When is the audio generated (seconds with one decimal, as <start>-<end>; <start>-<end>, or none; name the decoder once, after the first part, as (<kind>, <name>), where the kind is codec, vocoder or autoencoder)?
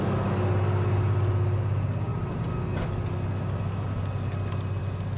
none